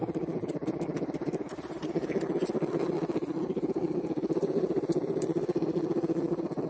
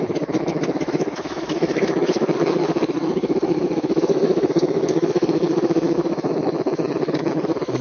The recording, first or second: first